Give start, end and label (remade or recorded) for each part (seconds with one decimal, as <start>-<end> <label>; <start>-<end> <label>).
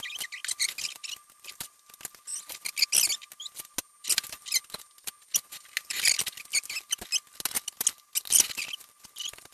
0.0-9.5 recorded